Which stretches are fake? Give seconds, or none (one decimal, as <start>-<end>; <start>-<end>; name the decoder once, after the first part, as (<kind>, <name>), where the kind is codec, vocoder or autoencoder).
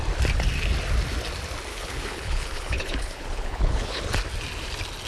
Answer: 1.7-4.0 (codec, HILCodec)